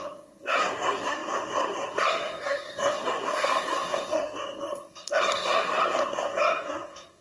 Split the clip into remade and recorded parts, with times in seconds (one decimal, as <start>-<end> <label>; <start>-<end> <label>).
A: 0.0-7.2 remade